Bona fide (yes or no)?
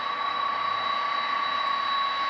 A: yes